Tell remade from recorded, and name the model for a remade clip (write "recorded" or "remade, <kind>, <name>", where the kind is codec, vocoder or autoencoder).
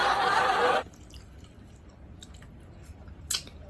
remade, vocoder, BigVGAN v2